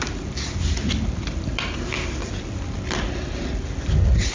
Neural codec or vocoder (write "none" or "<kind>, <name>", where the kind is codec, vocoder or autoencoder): none